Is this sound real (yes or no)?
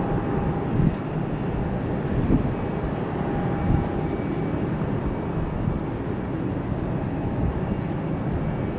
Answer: yes